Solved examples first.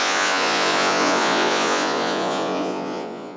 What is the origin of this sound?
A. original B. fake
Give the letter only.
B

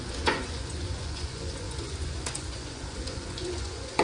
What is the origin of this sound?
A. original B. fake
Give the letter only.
B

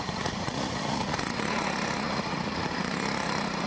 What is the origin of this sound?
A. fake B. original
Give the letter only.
A